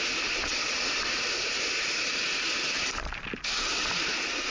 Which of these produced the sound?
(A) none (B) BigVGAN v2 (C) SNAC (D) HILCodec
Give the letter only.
A